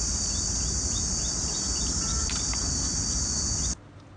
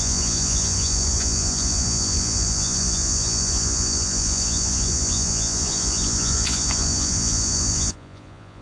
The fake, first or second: second